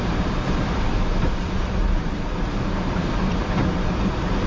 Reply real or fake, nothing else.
fake